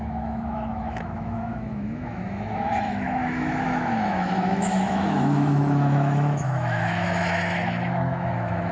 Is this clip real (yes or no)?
no